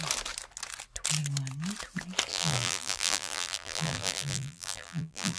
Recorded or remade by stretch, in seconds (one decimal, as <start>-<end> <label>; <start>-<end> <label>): 0.0-2.3 recorded; 2.3-5.4 remade